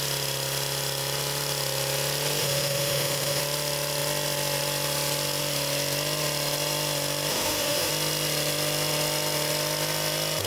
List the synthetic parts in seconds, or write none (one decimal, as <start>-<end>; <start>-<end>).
2.4-3.4; 7.3-7.9